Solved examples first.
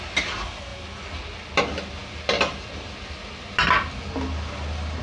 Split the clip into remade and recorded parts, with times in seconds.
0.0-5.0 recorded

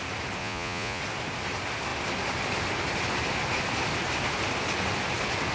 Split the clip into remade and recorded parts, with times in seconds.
0.0-0.4 recorded; 0.4-1.0 remade; 1.0-5.5 recorded

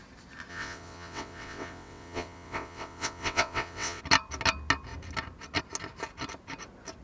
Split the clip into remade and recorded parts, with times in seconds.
0.0-0.5 recorded; 0.5-4.0 remade; 4.0-7.0 recorded

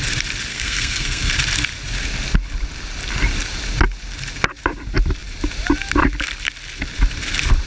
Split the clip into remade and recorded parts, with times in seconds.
0.0-0.5 recorded; 0.5-1.3 remade; 1.3-7.7 recorded

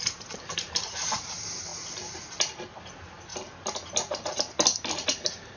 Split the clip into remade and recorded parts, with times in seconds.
0.0-1.7 remade; 1.7-2.9 recorded; 2.9-3.3 remade; 3.3-5.6 recorded